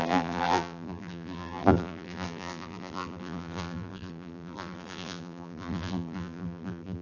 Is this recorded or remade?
remade